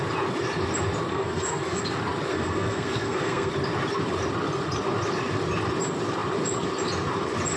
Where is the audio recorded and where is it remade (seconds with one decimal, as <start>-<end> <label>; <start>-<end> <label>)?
0.0-1.1 recorded; 1.1-1.8 remade; 1.8-2.3 recorded; 2.3-3.5 remade; 3.5-7.6 recorded